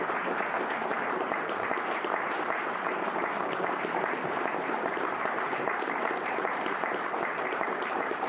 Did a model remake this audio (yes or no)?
yes